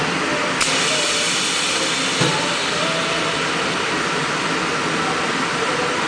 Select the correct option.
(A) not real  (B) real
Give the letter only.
B